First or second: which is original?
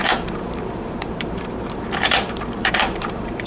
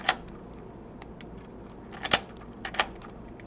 second